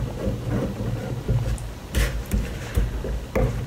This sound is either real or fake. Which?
real